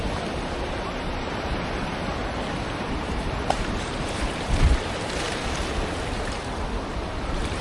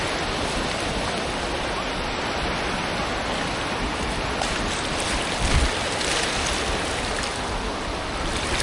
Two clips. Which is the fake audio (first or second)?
first